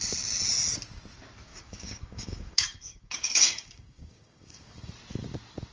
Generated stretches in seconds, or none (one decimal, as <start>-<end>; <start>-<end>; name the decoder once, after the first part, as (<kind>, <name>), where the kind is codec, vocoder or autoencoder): 1.5-4.9 (codec, DAC)